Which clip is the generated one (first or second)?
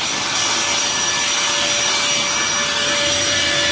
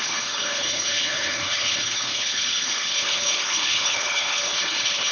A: second